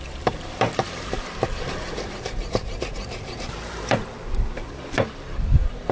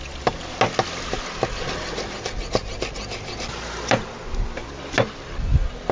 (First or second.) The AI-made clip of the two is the first